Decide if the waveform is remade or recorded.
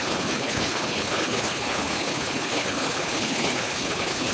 remade